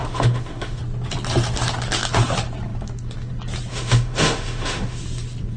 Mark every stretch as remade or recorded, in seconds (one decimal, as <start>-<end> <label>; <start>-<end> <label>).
0.0-0.8 remade; 0.8-3.7 recorded; 3.7-5.0 remade; 5.0-5.6 recorded